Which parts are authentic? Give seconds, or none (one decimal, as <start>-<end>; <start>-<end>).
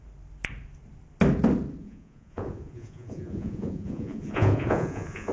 0.0-1.8